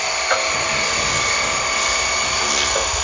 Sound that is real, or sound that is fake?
real